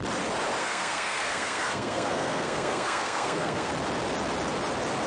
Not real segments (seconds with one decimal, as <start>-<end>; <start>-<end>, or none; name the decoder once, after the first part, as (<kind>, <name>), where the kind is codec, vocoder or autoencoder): 0.6-3.7 (codec, SNAC)